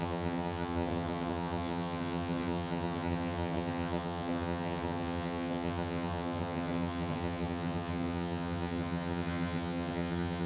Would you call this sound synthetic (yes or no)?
yes